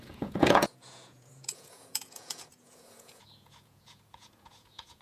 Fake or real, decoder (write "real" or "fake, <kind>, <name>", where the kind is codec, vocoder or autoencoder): fake, vocoder, Vocos